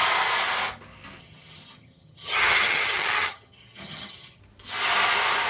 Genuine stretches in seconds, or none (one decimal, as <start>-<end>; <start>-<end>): 0.0-1.2; 4.4-5.5